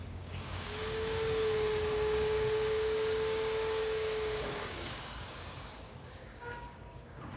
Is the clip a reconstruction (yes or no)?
yes